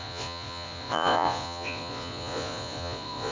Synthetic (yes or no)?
yes